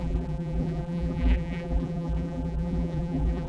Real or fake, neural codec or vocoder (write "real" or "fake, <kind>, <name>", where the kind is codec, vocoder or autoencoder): fake, vocoder, BigVGAN v2